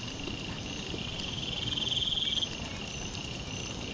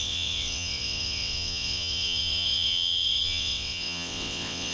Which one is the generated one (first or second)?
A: second